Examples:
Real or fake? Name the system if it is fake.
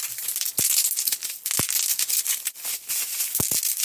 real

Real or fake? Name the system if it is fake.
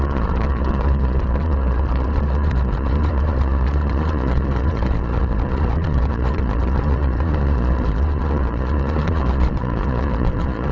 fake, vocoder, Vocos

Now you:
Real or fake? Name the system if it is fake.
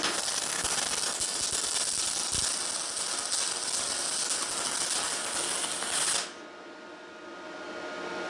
real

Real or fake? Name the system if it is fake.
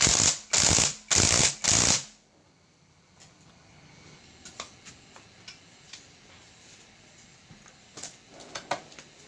real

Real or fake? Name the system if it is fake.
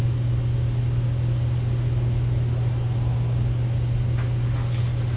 real